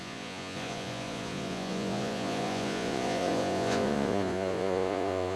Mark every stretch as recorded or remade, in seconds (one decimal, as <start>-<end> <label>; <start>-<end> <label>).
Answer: 0.0-5.4 remade